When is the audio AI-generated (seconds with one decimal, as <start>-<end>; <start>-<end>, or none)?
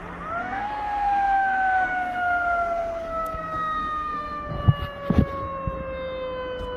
0.4-4.5